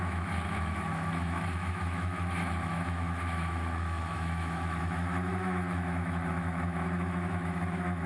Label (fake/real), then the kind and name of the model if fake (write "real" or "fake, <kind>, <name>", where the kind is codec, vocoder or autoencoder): fake, autoencoder, DAC-VAE